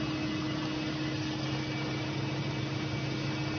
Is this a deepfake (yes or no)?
no